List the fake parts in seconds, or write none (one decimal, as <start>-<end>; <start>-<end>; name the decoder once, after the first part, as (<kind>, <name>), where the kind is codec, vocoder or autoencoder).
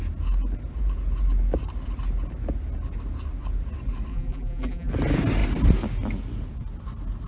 4.1-4.9 (vocoder, BigVGAN v2)